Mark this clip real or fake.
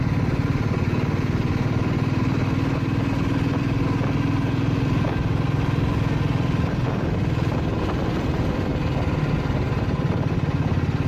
real